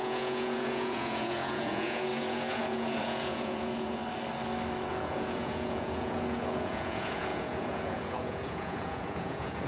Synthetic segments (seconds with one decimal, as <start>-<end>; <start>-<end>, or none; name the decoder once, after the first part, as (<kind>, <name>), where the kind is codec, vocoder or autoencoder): 0.0-4.0 (vocoder, Vocos); 4.9-9.7